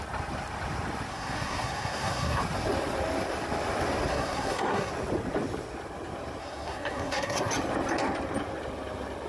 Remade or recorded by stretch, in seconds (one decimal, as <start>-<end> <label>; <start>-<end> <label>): 0.0-1.1 recorded; 1.1-2.4 remade; 2.4-4.1 recorded; 4.1-4.9 remade; 4.9-6.4 recorded; 6.4-7.5 remade; 7.5-9.3 recorded